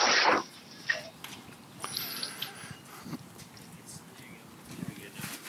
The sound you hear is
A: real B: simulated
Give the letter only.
A